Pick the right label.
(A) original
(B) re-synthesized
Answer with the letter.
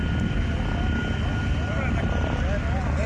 A